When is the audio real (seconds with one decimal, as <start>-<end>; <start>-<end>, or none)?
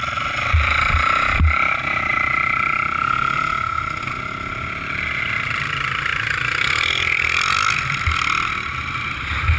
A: 0.0-6.1; 8.0-9.6